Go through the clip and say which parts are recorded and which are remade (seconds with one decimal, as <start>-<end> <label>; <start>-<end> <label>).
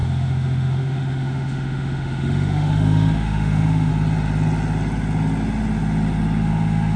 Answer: 0.0-3.9 remade; 3.9-6.4 recorded; 6.4-7.0 remade